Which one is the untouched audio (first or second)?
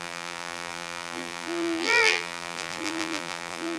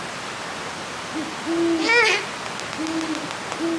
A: second